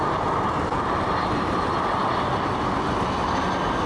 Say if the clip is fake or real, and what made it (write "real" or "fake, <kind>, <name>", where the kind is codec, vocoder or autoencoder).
real